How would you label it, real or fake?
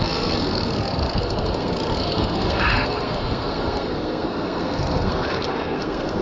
fake